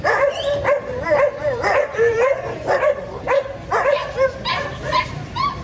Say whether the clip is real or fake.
fake